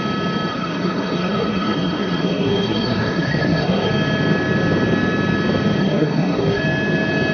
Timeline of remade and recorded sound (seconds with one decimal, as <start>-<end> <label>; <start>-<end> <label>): 0.0-0.5 recorded; 0.5-3.9 remade; 3.9-5.8 recorded; 5.8-6.6 remade; 6.6-7.3 recorded